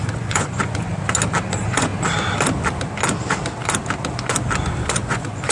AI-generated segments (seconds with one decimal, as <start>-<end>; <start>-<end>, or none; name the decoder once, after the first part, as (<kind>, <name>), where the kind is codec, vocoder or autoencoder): 0.0-0.9 (vocoder, Vocos); 1.5-1.9; 4.8-5.5